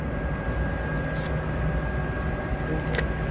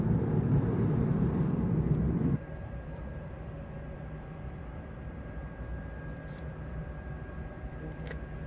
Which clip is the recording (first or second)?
first